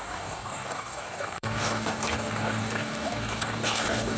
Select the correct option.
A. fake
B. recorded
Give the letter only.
A